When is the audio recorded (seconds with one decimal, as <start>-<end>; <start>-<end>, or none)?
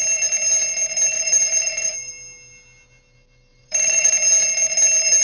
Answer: 0.0-1.1; 2.1-3.5; 4.1-5.2